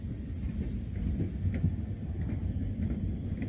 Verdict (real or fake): real